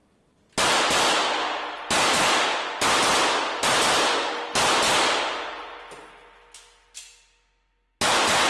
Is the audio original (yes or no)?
yes